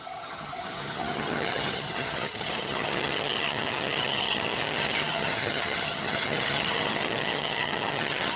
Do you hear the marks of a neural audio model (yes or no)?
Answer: yes